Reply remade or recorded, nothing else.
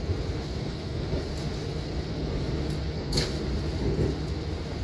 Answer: recorded